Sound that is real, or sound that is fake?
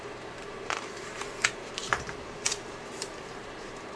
fake